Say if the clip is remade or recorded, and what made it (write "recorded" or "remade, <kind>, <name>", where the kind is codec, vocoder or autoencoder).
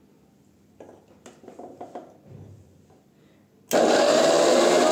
recorded